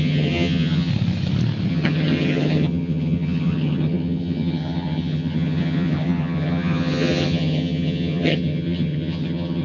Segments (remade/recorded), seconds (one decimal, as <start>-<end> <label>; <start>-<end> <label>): 0.0-0.9 remade; 0.9-1.7 recorded; 1.7-9.6 remade